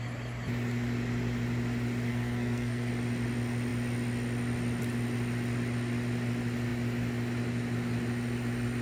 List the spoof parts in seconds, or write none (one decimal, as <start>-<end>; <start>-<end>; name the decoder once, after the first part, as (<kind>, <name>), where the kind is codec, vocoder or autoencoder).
2.1-2.9 (codec, SNAC)